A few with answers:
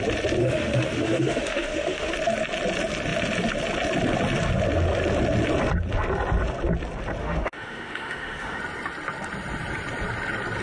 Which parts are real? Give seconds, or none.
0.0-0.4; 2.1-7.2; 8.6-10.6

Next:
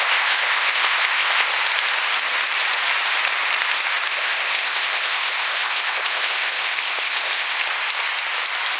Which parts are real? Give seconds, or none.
1.5-4.1; 7.6-8.8

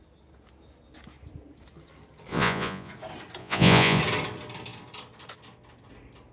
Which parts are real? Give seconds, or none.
0.0-2.3; 2.9-3.4; 4.0-6.3

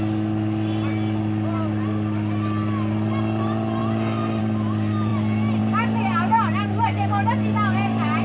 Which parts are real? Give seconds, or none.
0.0-8.2

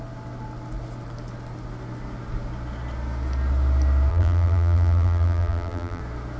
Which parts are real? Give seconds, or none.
0.0-4.1; 6.0-6.4

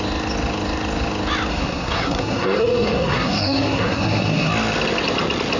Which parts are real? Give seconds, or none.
0.0-1.5; 4.5-5.6

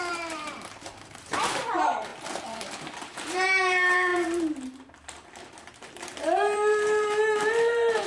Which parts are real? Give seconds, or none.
none

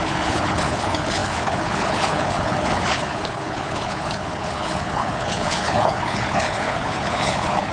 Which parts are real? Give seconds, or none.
none